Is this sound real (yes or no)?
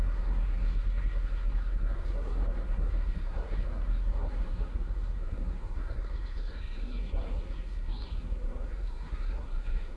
no